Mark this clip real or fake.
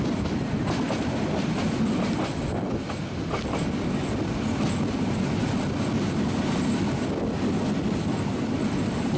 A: real